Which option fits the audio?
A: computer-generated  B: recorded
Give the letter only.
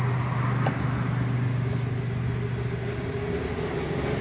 B